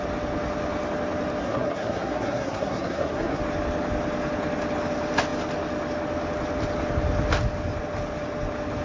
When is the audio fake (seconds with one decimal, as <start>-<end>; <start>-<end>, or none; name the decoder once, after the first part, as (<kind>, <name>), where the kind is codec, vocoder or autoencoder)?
1.4-3.4 (codec, SNAC)

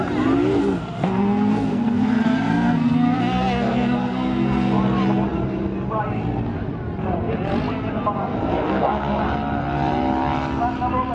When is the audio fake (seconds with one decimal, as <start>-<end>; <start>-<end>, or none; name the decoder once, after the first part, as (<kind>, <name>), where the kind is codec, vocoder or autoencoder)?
0.6-4.8 (codec, SNAC); 8.2-9.2

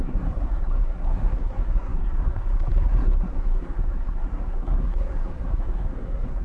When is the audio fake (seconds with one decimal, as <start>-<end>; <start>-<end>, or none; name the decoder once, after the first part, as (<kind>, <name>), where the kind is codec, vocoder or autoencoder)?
0.0-6.4 (codec, SNAC)

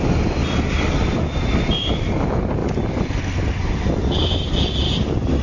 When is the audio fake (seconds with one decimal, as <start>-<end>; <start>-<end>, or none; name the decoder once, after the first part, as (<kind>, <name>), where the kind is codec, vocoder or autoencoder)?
none

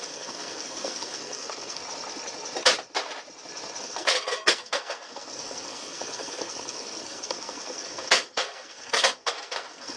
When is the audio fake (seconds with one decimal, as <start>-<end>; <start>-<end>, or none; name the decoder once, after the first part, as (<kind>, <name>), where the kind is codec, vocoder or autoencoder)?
0.0-1.8 (codec, SNAC); 3.8-10.0

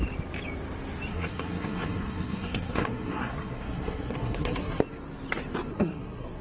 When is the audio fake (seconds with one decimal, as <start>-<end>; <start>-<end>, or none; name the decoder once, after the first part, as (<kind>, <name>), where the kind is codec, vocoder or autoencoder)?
1.1-4.8 (codec, SNAC); 5.7-6.4

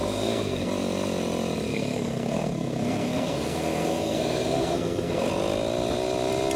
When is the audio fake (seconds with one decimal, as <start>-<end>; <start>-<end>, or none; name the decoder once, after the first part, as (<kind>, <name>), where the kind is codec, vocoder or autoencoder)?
0.0-0.7 (codec, SNAC); 1.7-5.3

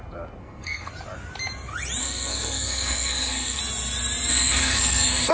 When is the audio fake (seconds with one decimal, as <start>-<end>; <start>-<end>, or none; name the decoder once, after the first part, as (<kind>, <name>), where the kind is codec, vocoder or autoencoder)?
0.4-0.9 (codec, SNAC); 2.0-3.6; 4.3-5.3